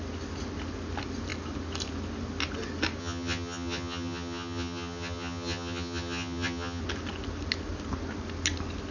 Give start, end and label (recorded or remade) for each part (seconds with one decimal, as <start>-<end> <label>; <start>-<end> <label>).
0.0-3.0 recorded; 3.0-6.8 remade; 6.8-8.9 recorded